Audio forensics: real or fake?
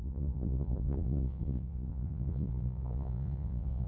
fake